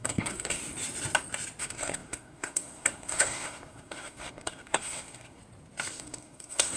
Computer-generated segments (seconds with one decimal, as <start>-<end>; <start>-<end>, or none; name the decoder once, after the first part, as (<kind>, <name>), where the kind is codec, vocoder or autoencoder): 0.0-0.6 (codec, SNAC); 1.6-5.4; 5.9-6.8